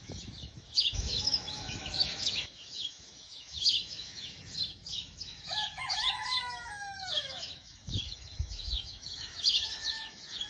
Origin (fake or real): fake